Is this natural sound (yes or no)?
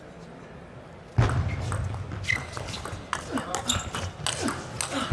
yes